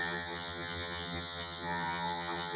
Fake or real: fake